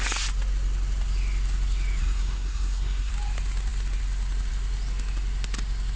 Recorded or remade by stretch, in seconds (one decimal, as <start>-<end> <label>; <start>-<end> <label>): 0.0-2.0 recorded; 2.0-3.1 remade; 3.1-6.0 recorded